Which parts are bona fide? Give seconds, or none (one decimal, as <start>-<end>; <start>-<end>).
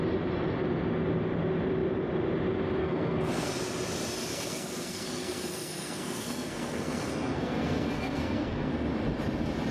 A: 0.0-2.8; 3.5-4.3; 8.7-9.7